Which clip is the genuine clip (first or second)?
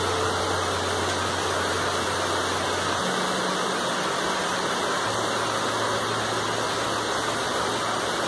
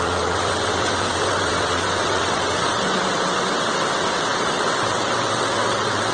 first